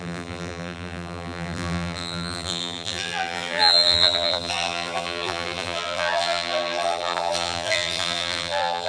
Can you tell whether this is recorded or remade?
remade